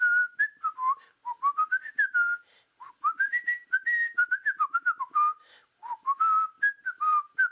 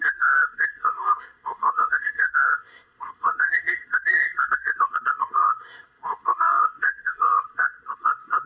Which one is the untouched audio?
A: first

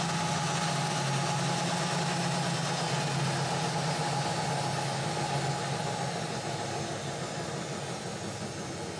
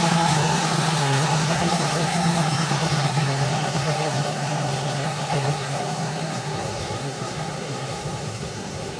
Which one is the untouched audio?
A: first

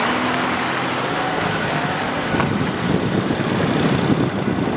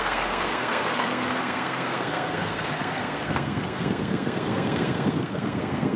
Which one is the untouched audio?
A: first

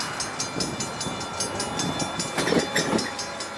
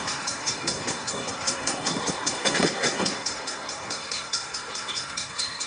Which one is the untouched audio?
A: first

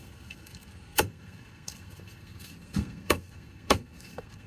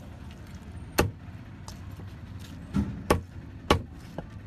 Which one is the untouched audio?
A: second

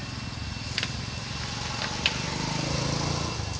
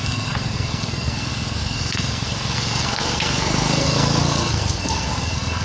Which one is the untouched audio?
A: first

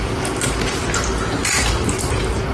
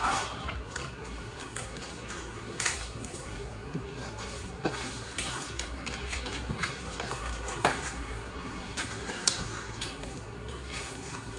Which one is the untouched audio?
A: first